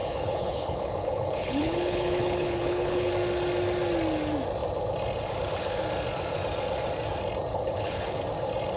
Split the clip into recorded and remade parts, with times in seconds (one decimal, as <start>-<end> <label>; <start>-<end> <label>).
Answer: 0.0-3.1 remade; 3.1-7.5 recorded; 7.5-8.2 remade; 8.2-8.8 recorded